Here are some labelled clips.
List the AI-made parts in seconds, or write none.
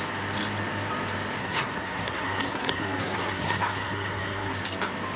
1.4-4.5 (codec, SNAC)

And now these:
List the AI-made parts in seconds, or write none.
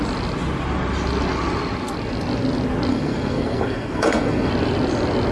2.9-4.5 (codec, SNAC)